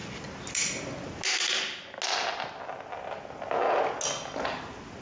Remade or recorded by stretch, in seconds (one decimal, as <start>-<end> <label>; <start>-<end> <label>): 0.0-5.0 recorded